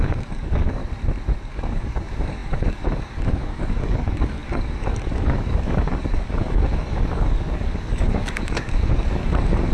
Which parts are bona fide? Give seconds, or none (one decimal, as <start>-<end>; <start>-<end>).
0.8-1.4